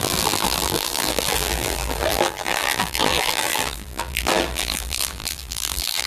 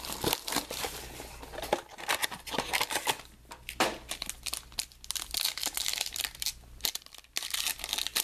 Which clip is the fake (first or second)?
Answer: first